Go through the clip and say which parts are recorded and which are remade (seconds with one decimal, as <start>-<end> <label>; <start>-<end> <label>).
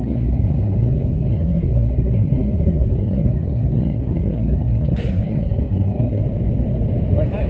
0.0-6.2 remade; 6.2-7.5 recorded